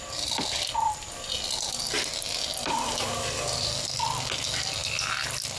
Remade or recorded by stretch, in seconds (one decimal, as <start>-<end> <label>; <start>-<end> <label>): 0.0-5.6 recorded